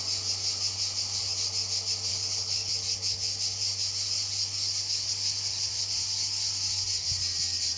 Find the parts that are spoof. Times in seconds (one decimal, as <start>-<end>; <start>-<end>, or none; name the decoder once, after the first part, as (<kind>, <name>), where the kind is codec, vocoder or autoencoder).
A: 2.1-2.7 (codec, HILCodec)